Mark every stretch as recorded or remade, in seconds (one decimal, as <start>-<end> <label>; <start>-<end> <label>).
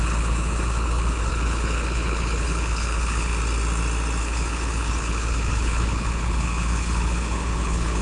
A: 0.0-3.3 remade; 3.3-4.2 recorded; 4.2-8.0 remade